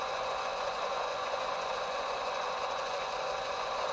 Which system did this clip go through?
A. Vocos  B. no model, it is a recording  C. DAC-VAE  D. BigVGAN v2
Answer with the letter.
A